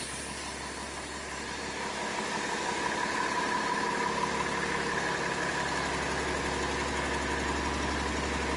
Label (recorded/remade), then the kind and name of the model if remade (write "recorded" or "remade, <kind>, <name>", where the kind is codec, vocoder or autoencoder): recorded